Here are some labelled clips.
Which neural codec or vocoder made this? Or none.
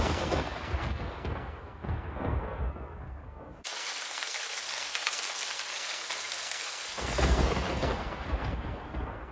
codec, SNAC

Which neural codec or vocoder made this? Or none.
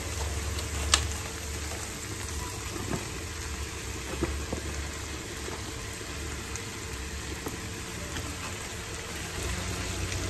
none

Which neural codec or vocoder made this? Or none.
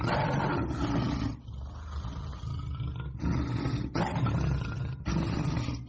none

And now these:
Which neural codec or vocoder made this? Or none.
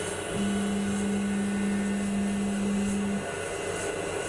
none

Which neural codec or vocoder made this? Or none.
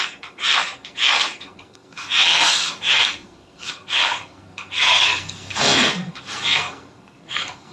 codec, SNAC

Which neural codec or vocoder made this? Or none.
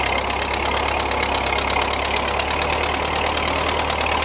none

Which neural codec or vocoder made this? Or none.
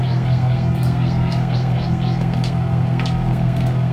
codec, SNAC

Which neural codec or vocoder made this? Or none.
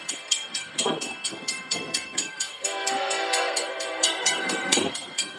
codec, SNAC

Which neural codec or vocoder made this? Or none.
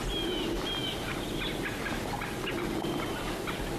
none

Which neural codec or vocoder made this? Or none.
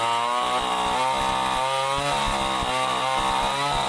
none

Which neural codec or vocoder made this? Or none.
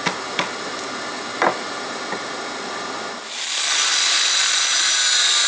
none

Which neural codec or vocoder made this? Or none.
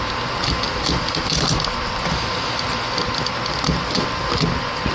none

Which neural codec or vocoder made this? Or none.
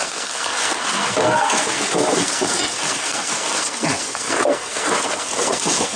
codec, SNAC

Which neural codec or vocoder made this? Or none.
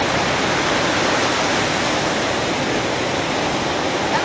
none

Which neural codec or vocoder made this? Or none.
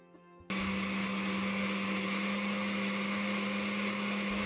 none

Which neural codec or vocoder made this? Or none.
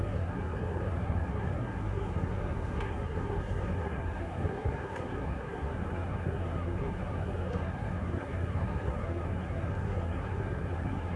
codec, SNAC